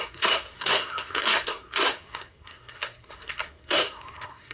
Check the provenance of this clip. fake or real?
fake